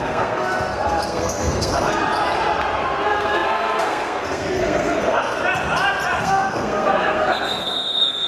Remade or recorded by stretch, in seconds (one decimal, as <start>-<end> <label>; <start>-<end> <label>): 0.0-2.0 remade; 2.0-2.8 recorded; 2.8-5.4 remade; 5.4-6.2 recorded; 6.2-8.3 remade